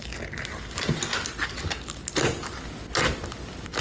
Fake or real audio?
real